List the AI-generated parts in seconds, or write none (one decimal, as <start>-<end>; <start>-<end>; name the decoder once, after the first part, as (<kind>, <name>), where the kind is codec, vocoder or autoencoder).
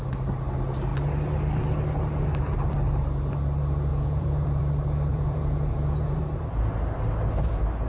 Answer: 3.9-4.6 (vocoder, Vocos); 5.1-6.2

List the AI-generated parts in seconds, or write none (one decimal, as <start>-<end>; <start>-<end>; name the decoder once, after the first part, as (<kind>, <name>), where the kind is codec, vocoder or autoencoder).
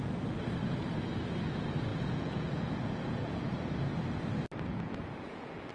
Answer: 1.9-3.5 (vocoder, Vocos); 4.7-5.7